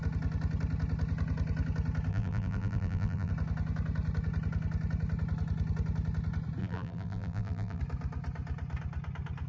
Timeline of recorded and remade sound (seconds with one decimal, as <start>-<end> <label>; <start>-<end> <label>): 0.0-2.1 recorded; 2.1-3.3 remade; 3.3-6.6 recorded; 6.6-7.8 remade; 7.8-9.5 recorded